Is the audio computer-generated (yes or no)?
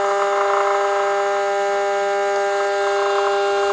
no